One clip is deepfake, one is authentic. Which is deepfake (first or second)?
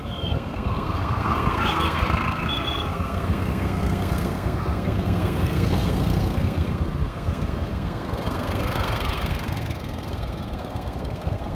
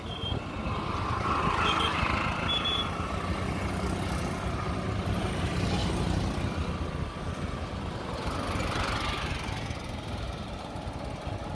first